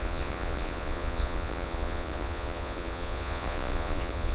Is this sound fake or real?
fake